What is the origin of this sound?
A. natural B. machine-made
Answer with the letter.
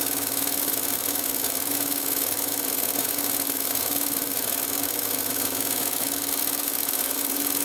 B